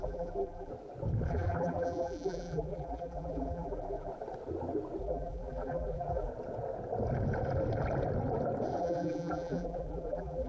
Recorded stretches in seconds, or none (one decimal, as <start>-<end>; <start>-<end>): 0.7-1.3; 4.1-5.0; 6.3-8.8